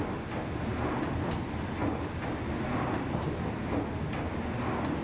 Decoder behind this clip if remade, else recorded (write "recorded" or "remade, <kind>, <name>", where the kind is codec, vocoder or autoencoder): recorded